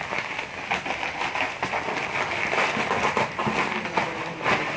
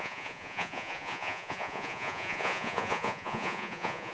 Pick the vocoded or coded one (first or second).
second